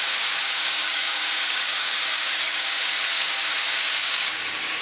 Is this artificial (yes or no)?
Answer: yes